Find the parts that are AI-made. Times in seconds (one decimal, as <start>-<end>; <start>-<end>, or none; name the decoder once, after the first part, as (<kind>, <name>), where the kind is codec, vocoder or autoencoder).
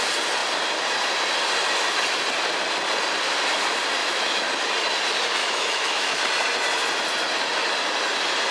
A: 4.0-4.5 (autoencoder, DAC-VAE); 5.4-6.2